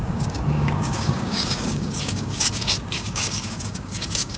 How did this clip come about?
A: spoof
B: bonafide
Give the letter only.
A